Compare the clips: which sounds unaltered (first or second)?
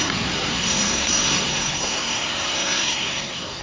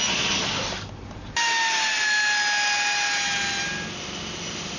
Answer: second